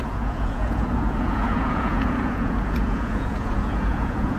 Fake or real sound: fake